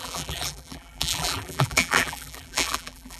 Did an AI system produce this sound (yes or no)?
yes